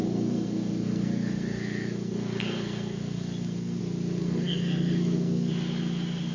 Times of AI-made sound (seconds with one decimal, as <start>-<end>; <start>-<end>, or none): 0.0-3.8; 4.2-5.5